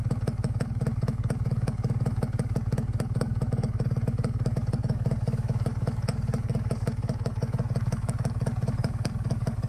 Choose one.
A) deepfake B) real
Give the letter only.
A